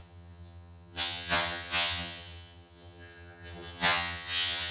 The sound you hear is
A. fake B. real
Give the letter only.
A